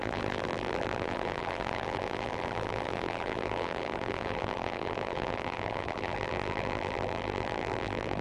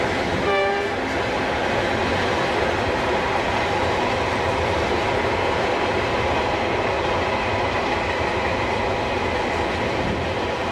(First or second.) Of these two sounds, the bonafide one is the second